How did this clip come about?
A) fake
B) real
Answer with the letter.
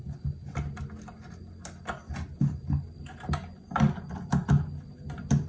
B